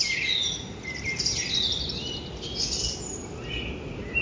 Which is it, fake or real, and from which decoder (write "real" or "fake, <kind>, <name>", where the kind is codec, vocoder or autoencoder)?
real